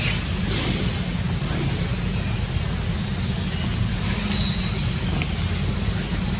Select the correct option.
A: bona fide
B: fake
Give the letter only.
A